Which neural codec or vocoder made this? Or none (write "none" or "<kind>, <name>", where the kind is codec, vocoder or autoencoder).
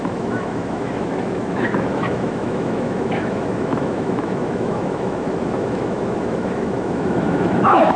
autoencoder, DAC-VAE